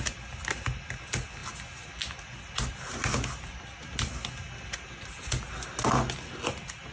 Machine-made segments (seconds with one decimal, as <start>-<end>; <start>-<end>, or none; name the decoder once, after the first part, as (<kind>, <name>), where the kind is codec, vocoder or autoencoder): none